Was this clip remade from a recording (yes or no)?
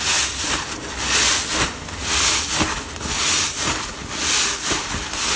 no